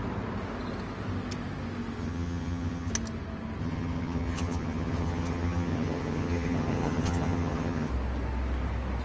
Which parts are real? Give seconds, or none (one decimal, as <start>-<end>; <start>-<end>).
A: 0.0-2.0; 2.9-3.6; 7.9-9.0